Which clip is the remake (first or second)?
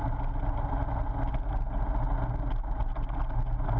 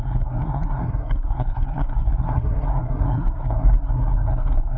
second